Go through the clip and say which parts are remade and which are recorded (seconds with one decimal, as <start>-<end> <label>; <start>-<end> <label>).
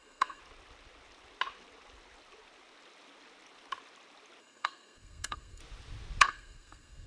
0.0-0.4 remade; 0.4-4.4 recorded; 4.4-5.6 remade; 5.6-6.2 recorded; 6.2-7.1 remade